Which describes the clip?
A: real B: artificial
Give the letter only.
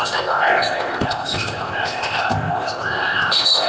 B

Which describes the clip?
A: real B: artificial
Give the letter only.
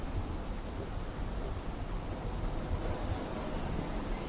A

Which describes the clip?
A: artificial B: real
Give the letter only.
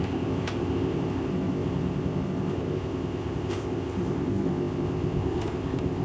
A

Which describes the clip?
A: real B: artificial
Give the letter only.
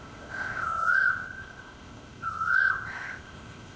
B